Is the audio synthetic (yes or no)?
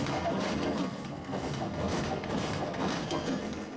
yes